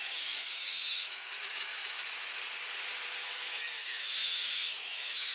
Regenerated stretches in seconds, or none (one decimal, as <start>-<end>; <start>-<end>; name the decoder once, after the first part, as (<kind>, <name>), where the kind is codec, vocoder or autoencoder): 0.0-1.7 (autoencoder, DAC-VAE); 3.8-5.3